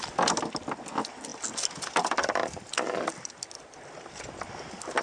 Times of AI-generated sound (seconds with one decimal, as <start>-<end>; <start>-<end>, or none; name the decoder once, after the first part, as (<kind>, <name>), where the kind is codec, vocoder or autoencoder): none